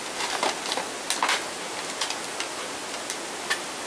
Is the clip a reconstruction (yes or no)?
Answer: no